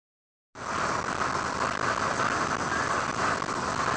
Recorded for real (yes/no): yes